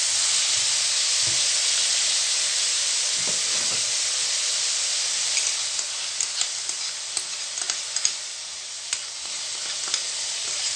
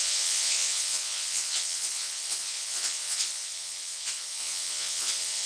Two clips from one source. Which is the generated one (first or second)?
second